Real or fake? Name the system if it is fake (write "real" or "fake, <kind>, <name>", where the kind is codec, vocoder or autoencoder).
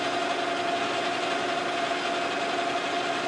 real